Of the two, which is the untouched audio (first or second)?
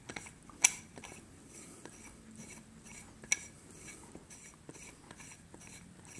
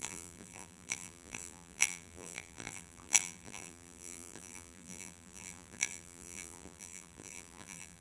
first